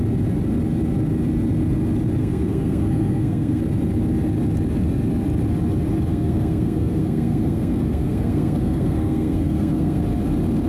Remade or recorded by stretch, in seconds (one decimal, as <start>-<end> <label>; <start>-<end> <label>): 0.0-2.2 recorded; 2.2-3.6 remade; 3.6-6.1 recorded; 6.1-10.0 remade; 10.0-10.7 recorded